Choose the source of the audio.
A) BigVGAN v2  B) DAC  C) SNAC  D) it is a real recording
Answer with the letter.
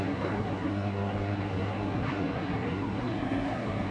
C